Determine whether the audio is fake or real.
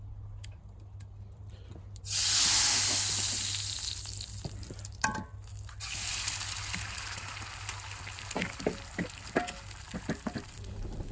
real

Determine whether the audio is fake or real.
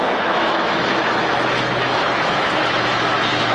fake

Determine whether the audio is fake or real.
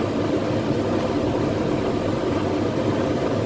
real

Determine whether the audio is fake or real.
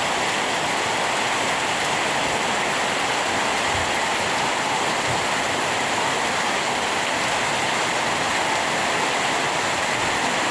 real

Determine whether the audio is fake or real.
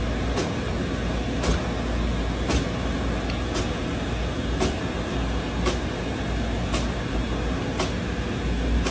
real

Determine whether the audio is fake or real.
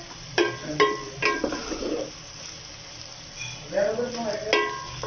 real